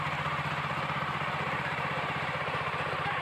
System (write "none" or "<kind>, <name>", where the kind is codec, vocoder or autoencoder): vocoder, BigVGAN v2